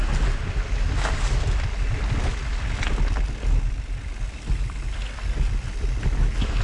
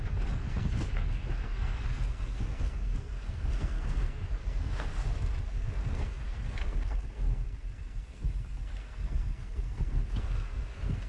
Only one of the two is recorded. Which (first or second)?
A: first